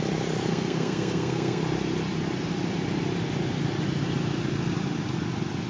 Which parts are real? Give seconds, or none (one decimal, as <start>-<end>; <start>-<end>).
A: 0.0-0.5; 1.6-5.7